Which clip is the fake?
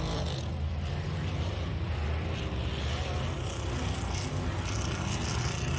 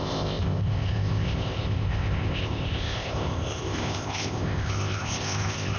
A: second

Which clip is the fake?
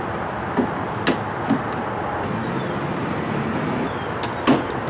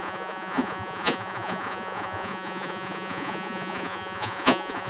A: second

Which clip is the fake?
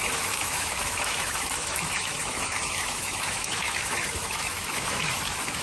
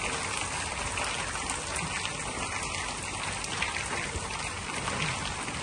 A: first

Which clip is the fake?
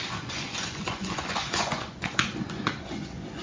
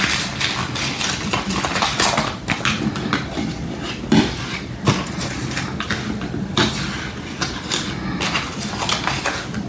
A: first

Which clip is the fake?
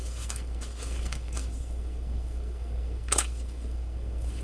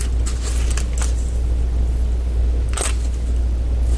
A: first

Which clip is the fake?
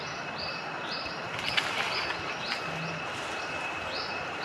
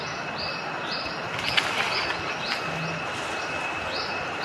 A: first